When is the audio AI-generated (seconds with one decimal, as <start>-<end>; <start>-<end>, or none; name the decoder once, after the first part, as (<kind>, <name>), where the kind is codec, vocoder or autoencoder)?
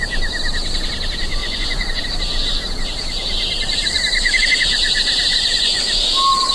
1.4-2.0 (vocoder, Vocos); 5.3-5.8